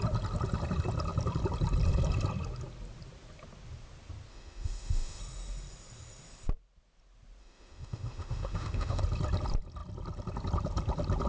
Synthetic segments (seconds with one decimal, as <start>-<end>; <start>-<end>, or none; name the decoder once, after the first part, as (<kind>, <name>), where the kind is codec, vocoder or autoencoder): 4.3-5.2 (autoencoder, DAC-VAE); 7.4-9.0